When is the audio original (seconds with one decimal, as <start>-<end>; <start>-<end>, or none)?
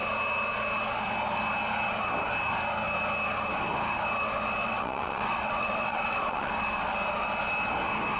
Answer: 0.0-4.6; 6.5-8.2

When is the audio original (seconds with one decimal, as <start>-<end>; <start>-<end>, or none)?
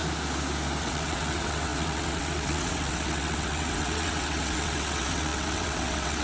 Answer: 0.0-0.8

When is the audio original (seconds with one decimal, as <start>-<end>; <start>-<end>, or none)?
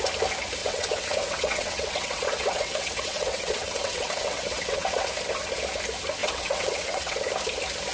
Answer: 0.0-0.6; 5.1-6.2; 7.2-7.9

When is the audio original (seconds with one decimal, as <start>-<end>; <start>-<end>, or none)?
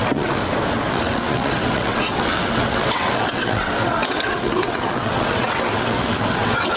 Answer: 0.4-0.9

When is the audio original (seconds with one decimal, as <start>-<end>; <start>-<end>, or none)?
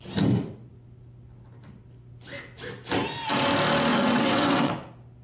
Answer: 0.0-3.9; 4.7-5.2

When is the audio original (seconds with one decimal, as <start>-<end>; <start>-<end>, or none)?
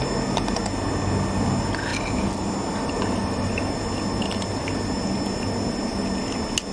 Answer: 0.0-6.7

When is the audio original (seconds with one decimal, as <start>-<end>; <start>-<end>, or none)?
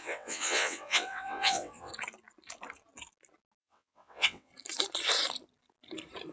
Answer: 1.9-3.6; 4.5-6.3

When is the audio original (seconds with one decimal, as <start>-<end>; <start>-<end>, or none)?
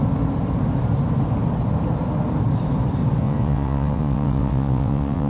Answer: 0.0-3.2